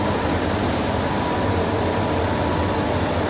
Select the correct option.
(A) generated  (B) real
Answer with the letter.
B